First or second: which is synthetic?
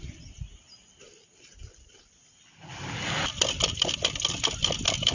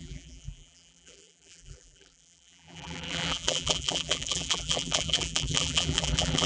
second